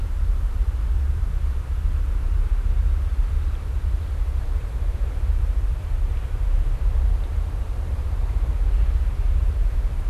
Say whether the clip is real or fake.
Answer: fake